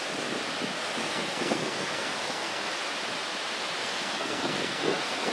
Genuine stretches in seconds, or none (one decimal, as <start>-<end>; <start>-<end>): 0.0-1.0; 2.7-3.8